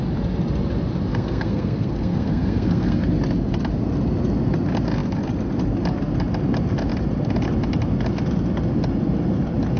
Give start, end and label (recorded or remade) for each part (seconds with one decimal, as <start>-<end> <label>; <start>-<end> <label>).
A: 0.0-1.1 recorded; 1.1-3.1 remade; 3.1-9.8 recorded